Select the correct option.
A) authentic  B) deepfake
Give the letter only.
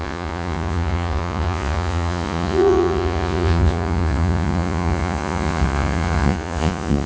B